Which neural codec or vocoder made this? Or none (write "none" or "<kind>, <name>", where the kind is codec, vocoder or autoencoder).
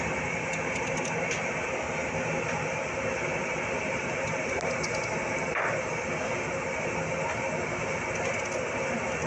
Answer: none